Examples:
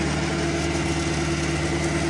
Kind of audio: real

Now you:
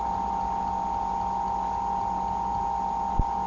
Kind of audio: real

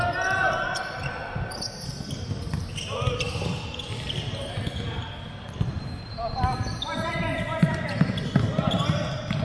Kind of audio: real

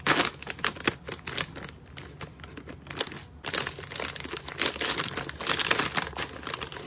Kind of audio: real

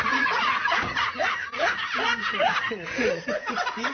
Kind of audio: fake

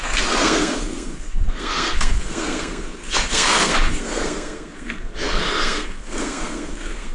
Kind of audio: fake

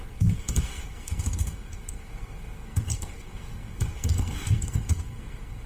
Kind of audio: fake